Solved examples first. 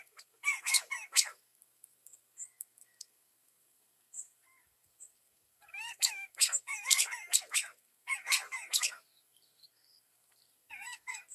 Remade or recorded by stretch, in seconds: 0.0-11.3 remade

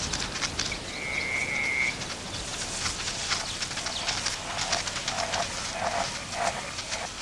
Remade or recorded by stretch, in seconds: 0.0-7.2 recorded

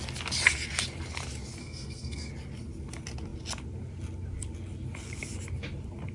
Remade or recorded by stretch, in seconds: 0.0-1.6 recorded; 1.6-2.3 remade; 2.3-6.1 recorded

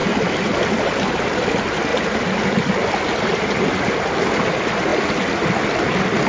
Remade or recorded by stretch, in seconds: 0.0-6.3 recorded